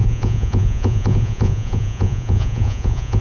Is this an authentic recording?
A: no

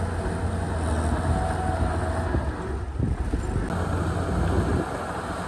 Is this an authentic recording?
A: yes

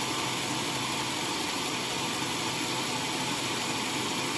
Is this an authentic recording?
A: no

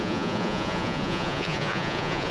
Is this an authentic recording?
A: no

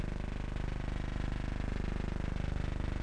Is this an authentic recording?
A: yes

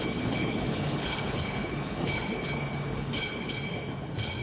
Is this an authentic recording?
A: no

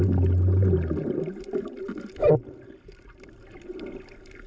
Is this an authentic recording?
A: yes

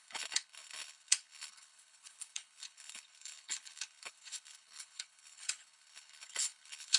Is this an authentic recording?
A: no